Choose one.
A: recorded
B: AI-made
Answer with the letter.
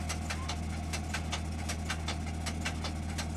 A